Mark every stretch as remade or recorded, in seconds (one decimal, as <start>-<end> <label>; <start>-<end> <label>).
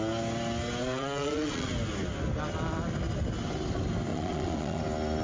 0.0-0.8 recorded; 0.8-1.7 remade; 1.7-4.1 recorded; 4.1-4.8 remade; 4.8-5.2 recorded